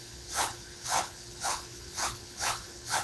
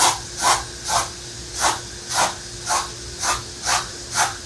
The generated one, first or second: first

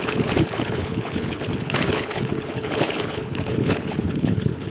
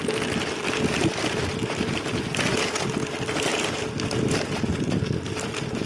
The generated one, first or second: first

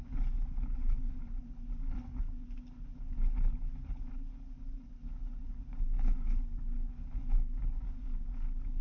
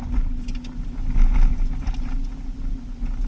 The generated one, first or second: first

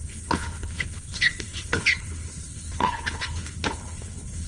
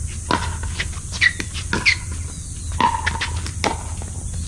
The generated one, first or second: first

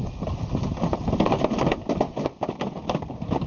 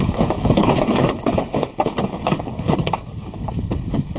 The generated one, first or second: second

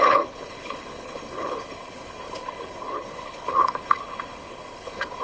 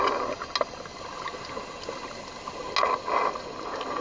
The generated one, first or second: first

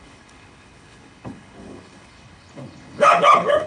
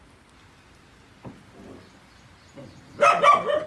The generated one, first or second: first